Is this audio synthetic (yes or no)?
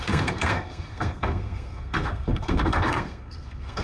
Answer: yes